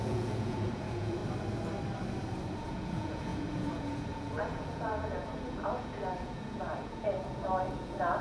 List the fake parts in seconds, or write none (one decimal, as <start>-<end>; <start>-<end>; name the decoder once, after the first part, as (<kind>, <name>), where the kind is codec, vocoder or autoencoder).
0.0-1.2 (vocoder, Vocos); 2.6-8.2

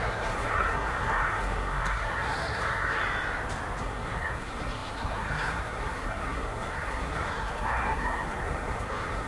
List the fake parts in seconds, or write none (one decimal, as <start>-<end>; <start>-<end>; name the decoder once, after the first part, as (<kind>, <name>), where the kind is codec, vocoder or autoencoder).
0.0-3.0 (codec, SNAC); 3.8-9.3